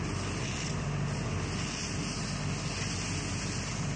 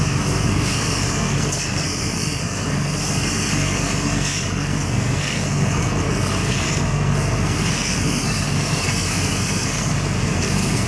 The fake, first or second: second